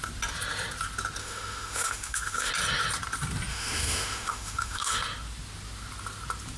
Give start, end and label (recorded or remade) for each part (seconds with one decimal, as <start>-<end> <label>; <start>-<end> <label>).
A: 0.0-1.2 recorded; 1.2-2.5 remade; 2.5-3.5 recorded; 3.5-5.0 remade; 5.0-6.6 recorded